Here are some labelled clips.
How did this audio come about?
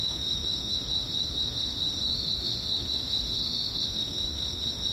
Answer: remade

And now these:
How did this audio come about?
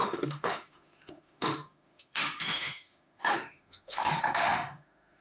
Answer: remade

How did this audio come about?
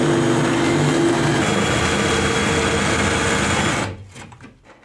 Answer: recorded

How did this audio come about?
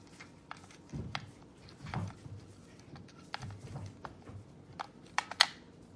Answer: recorded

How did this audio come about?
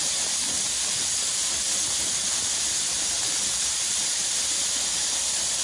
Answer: recorded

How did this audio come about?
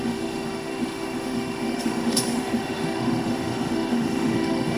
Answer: remade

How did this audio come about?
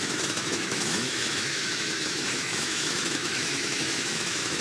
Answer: remade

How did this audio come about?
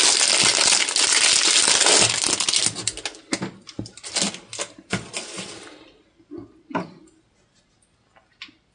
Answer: recorded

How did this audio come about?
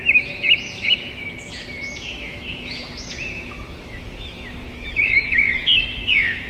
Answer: remade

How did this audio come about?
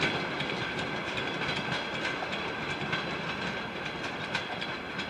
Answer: recorded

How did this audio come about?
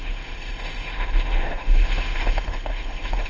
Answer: remade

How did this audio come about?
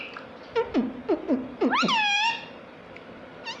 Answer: recorded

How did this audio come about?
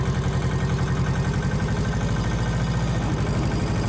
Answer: recorded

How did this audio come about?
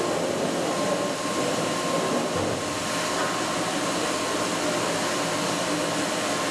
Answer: recorded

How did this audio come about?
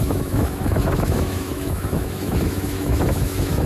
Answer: remade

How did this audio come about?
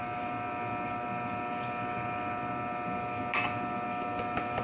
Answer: recorded